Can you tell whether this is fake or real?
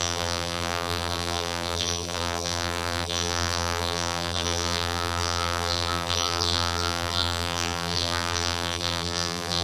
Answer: fake